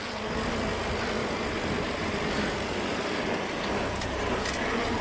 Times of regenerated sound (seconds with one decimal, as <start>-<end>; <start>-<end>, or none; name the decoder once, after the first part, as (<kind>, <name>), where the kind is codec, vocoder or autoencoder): none